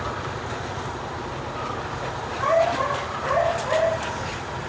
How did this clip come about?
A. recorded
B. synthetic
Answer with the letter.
A